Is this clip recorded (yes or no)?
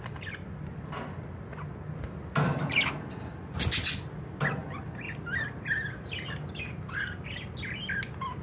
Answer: yes